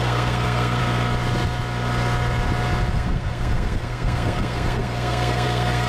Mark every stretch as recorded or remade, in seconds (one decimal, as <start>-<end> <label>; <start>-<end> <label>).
0.0-0.8 remade; 0.8-2.9 recorded; 2.9-5.9 remade